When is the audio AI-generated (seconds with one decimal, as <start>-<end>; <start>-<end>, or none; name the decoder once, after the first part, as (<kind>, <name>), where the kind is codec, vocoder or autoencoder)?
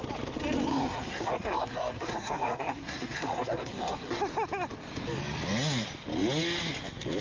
0.7-4.2 (codec, SNAC)